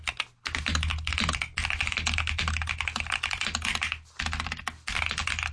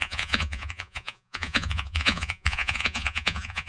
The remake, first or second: second